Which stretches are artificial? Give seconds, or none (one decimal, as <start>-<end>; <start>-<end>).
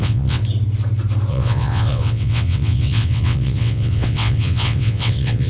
0.0-0.4; 1.3-5.5